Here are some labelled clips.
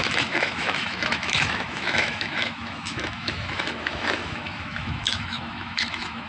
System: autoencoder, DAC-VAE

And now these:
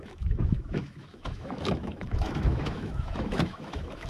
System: autoencoder, DAC-VAE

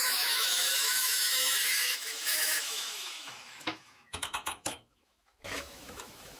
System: autoencoder, DAC-VAE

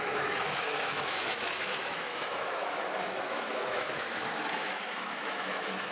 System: autoencoder, DAC-VAE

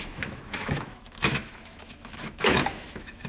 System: autoencoder, DAC-VAE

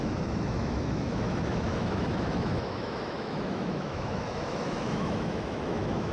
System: autoencoder, DAC-VAE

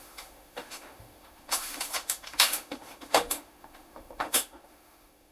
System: autoencoder, DAC-VAE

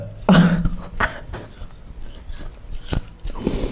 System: none